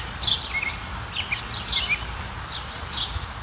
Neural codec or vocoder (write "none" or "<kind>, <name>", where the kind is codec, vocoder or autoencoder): none